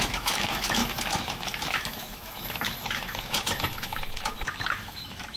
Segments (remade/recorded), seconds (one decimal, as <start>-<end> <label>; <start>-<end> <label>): 0.0-5.4 remade